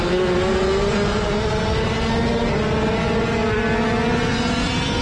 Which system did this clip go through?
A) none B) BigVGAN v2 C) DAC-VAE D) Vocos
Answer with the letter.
A